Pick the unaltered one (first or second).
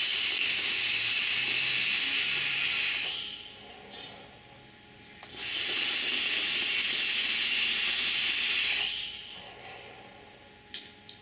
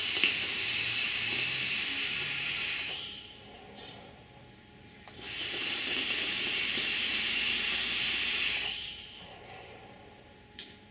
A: first